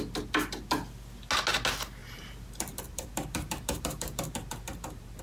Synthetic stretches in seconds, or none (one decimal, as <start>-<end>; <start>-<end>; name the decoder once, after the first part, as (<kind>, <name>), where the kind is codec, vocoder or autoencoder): 2.0-5.2 (vocoder, BigVGAN v2)